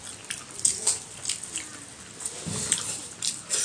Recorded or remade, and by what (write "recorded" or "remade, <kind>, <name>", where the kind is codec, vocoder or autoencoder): recorded